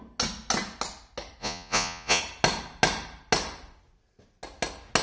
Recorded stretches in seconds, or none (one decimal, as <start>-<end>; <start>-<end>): 0.0-1.4; 2.2-5.0